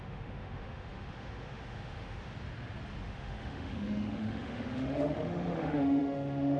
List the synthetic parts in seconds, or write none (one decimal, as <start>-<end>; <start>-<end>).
0.0-2.3; 3.0-6.6